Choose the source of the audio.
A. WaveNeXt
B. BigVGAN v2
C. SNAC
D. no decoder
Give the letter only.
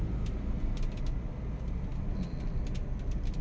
D